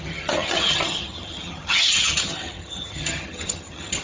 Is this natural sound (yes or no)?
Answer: no